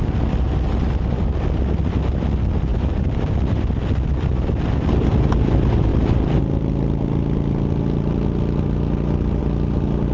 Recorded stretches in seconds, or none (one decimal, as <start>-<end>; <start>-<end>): 0.0-2.7; 3.6-10.1